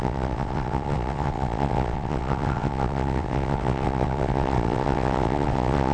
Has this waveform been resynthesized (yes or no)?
yes